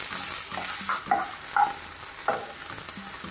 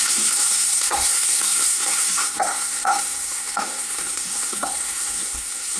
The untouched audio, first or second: first